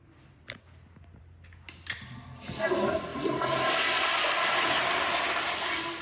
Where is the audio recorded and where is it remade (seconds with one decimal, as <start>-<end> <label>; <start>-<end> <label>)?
0.0-6.0 recorded